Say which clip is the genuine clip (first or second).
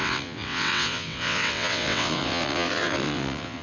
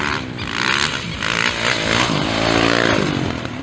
second